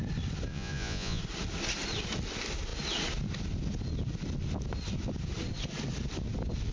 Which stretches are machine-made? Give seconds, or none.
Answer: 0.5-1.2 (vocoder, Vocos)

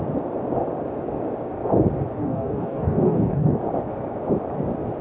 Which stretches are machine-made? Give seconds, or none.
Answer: 2.2-3.6 (codec, DAC)

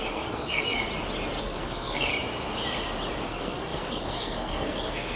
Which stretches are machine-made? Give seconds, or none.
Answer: 0.0-0.9 (codec, SNAC); 1.4-2.1; 3.2-5.2